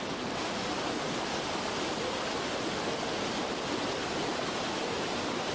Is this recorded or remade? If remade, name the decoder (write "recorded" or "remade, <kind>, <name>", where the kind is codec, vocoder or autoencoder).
recorded